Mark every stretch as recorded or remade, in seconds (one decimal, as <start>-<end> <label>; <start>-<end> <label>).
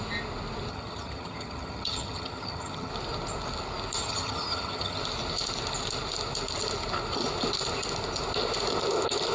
0.0-0.7 recorded; 0.7-2.9 remade; 2.9-4.0 recorded; 4.0-5.0 remade; 5.0-9.3 recorded